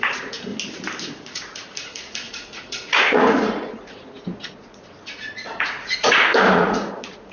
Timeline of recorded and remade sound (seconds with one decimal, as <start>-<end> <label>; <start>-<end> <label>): 0.0-0.5 remade; 0.5-1.0 recorded; 1.0-7.3 remade